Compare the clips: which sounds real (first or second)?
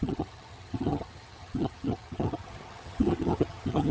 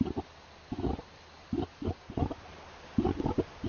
second